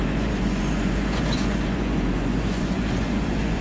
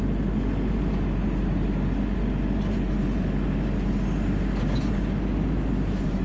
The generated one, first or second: first